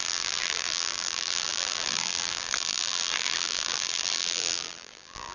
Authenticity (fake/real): fake